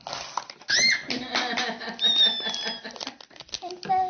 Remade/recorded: recorded